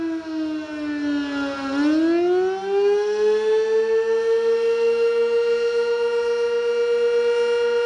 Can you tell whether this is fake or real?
real